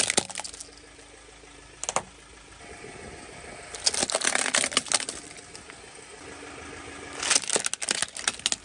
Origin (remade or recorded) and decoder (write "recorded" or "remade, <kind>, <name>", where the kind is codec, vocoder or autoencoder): recorded